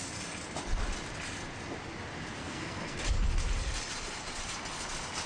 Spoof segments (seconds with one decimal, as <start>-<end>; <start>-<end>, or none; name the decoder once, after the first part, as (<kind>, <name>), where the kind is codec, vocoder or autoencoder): 2.4-3.0 (codec, SNAC)